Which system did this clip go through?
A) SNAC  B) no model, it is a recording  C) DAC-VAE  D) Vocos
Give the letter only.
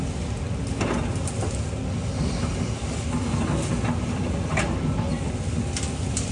B